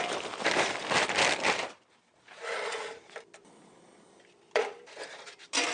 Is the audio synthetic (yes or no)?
yes